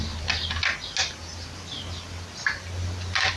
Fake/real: real